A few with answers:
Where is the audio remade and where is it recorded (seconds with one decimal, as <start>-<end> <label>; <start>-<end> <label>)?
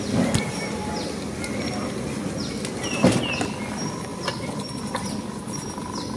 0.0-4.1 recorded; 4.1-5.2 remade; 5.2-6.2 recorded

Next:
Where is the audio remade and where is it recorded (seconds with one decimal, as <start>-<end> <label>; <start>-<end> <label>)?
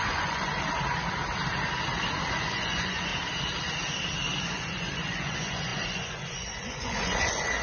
0.0-0.5 remade; 0.5-2.3 recorded; 2.3-3.1 remade; 3.1-4.4 recorded; 4.4-7.6 remade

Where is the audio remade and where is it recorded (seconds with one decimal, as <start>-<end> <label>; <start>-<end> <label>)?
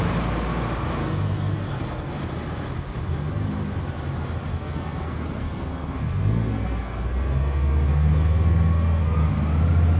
0.0-1.0 recorded; 1.0-2.1 remade; 2.1-4.5 recorded; 4.5-9.3 remade; 9.3-10.0 recorded